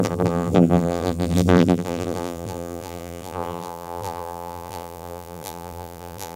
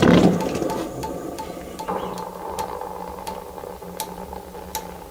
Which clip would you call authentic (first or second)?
second